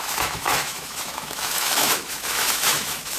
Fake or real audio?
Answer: fake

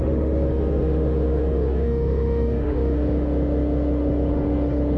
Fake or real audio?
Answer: fake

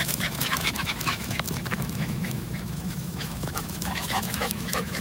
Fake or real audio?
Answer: fake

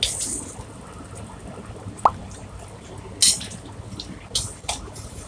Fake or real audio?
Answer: real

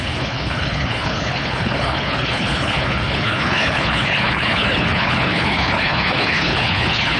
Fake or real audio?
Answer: fake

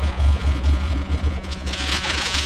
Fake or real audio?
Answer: fake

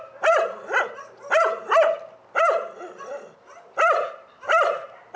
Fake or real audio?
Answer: real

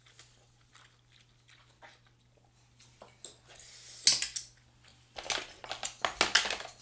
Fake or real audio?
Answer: real